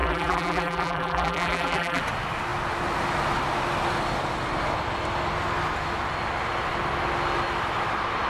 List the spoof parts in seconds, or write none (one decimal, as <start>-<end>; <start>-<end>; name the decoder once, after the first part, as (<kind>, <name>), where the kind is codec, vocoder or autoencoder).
0.0-2.0 (vocoder, BigVGAN v2)